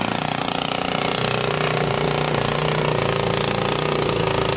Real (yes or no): yes